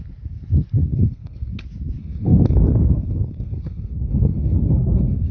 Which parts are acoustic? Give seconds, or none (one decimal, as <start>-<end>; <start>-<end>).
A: 0.0-0.9; 1.5-2.0